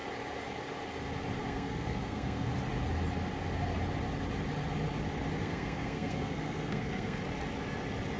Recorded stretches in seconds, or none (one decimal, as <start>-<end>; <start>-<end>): 0.0-1.4; 2.5-5.4; 7.2-8.2